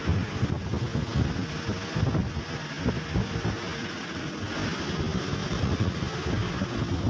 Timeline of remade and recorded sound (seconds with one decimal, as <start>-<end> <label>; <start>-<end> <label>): 0.0-3.8 recorded; 3.8-4.4 remade; 4.4-5.4 recorded; 5.4-6.0 remade; 6.0-7.1 recorded